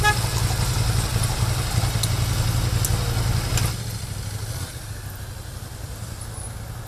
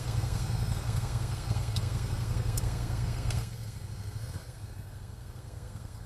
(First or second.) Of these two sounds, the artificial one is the second